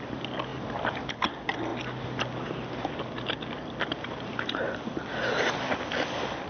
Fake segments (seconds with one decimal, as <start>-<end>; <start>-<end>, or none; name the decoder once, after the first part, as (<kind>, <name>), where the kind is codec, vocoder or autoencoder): none